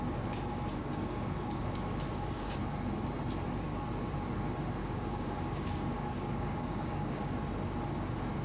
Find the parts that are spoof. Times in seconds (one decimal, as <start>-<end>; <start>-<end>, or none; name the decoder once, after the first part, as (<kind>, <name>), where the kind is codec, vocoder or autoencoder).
0.8-2.6 (codec, DAC); 4.8-7.4